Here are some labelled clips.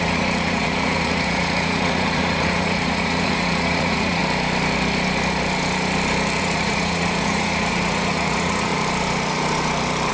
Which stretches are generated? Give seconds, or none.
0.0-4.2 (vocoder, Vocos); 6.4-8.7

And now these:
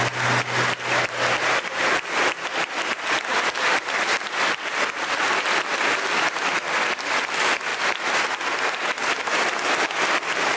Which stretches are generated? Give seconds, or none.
none

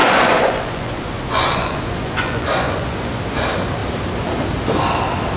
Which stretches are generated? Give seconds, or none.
0.0-3.2 (vocoder, Vocos)

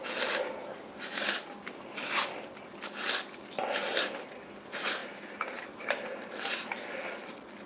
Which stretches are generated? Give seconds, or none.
none